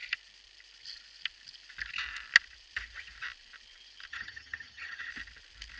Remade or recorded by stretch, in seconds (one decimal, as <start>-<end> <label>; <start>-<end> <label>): 0.0-4.1 recorded; 4.1-5.1 remade; 5.1-5.8 recorded